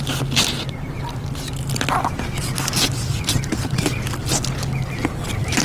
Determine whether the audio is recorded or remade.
recorded